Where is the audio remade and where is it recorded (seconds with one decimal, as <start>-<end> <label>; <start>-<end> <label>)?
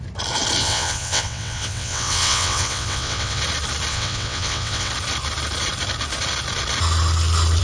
0.0-0.6 recorded; 0.6-3.4 remade; 3.4-3.9 recorded; 3.9-4.9 remade; 4.9-7.6 recorded